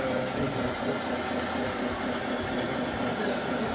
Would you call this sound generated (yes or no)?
no